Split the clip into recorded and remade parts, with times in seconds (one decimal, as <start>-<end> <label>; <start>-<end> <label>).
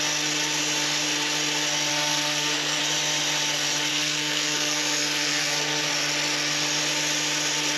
0.0-1.9 recorded; 1.9-2.8 remade; 2.8-3.9 recorded; 3.9-5.9 remade; 5.9-7.8 recorded